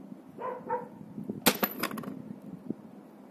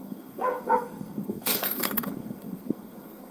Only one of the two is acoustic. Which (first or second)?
first